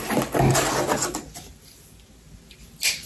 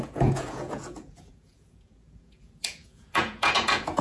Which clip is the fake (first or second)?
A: second